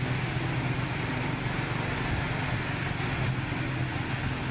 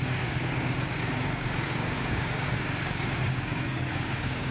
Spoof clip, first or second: second